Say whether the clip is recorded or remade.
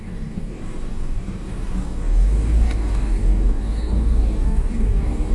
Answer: remade